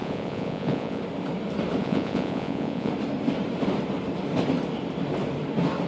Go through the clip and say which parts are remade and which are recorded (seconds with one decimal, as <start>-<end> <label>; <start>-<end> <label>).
0.0-1.0 remade; 1.0-1.8 recorded; 1.8-2.9 remade; 2.9-5.9 recorded